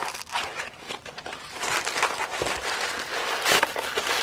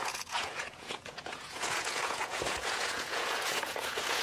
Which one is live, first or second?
first